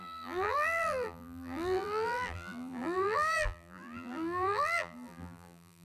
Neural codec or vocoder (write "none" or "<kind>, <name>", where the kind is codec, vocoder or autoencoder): vocoder, BigVGAN v2